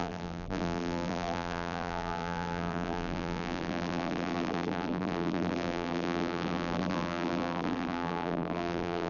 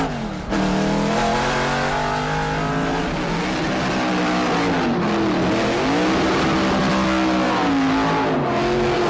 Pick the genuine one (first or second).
second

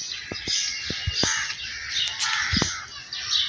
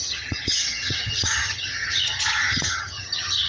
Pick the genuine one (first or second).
first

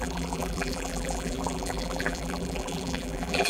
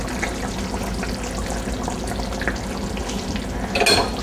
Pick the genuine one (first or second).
second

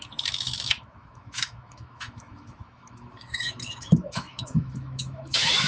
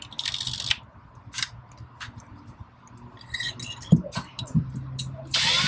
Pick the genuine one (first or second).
second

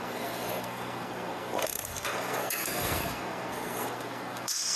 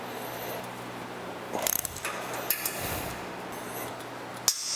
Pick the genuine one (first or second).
second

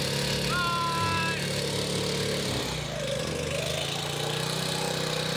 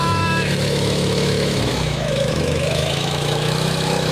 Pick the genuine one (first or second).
first